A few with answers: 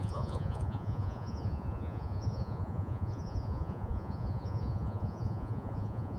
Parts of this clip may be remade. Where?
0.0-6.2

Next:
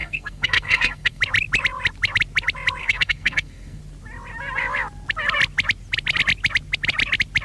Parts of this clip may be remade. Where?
0.0-1.2; 2.8-3.8

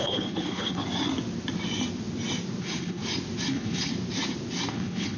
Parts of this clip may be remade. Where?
0.0-0.8; 2.6-3.0; 3.5-3.9; 4.7-5.2

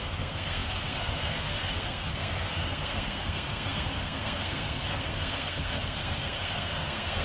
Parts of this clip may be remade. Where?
0.0-7.2

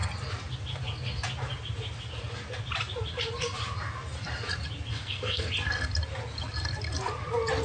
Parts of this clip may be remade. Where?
4.9-5.5